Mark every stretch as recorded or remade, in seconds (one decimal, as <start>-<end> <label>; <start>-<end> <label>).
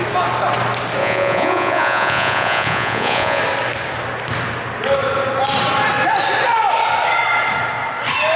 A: 0.0-1.0 recorded; 1.0-3.4 remade; 3.4-8.4 recorded